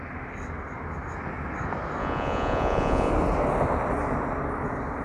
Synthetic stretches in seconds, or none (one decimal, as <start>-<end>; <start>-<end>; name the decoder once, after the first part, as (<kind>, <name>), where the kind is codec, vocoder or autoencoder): 2.0-3.1 (vocoder, Vocos)